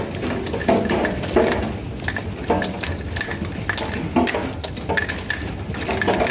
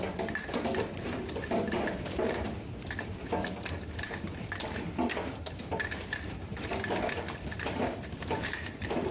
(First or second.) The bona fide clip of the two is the first